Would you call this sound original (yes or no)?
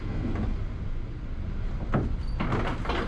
yes